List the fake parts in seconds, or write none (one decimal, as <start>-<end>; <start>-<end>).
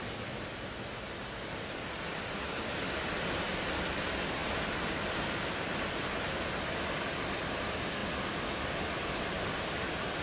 none